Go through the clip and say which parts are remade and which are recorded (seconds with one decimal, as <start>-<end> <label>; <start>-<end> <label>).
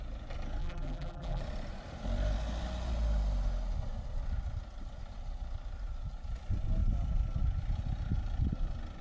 0.0-0.6 recorded; 0.6-1.4 remade; 1.4-9.0 recorded